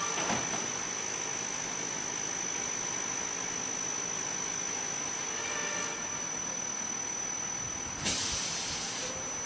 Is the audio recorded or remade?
recorded